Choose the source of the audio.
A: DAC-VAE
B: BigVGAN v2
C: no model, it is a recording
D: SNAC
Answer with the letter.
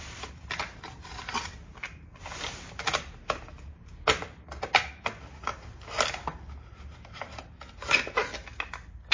C